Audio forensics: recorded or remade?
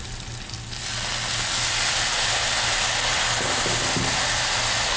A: recorded